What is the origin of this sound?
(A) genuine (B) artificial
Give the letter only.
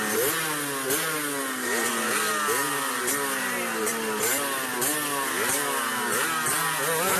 A